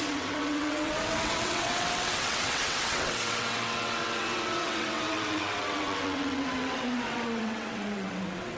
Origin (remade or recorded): remade